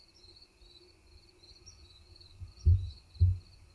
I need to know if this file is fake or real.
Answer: fake